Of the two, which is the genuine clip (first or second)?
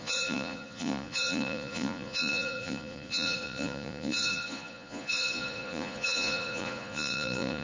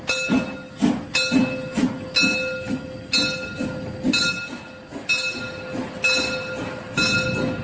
second